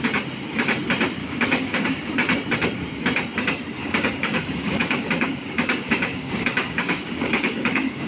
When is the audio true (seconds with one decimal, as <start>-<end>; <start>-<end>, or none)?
0.0-1.2; 2.1-3.8